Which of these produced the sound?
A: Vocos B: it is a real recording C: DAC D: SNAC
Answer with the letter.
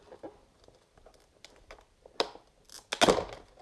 B